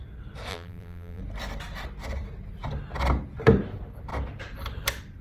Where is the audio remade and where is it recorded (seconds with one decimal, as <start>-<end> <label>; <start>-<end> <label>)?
0.0-0.5 recorded; 0.5-1.2 remade; 1.2-5.2 recorded